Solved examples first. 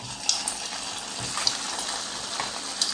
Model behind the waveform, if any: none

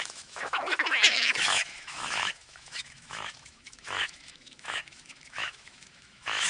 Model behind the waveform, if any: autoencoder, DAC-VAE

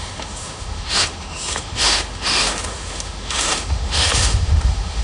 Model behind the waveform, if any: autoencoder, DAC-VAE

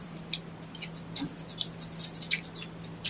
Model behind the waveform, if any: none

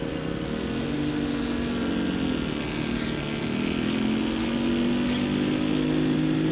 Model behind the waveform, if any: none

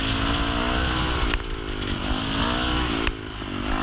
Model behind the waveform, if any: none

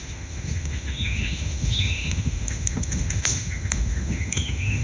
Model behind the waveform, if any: autoencoder, DAC-VAE